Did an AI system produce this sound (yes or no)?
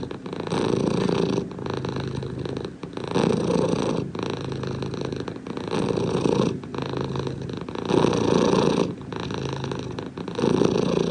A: no